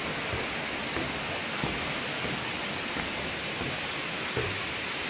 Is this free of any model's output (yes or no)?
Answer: yes